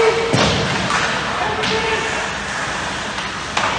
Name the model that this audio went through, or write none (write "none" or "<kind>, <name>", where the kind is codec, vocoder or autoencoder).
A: none